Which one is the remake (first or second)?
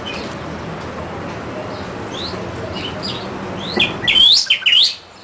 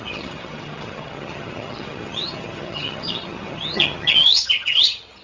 second